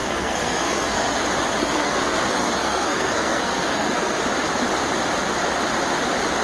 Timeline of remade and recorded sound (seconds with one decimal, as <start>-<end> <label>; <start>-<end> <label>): 0.0-1.2 remade; 1.2-1.6 recorded; 1.6-4.2 remade; 4.2-6.4 recorded